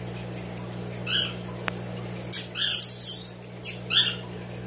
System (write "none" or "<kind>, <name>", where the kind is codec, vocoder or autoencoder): none